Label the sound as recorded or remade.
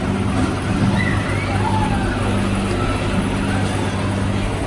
recorded